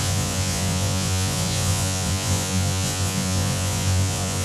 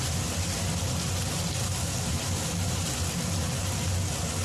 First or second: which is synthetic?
first